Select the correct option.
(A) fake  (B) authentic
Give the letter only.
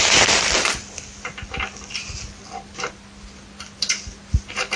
B